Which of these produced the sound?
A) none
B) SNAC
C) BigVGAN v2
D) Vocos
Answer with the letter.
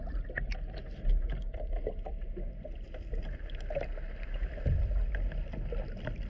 A